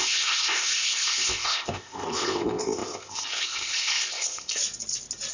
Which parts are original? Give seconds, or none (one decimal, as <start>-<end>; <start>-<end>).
4.6-5.3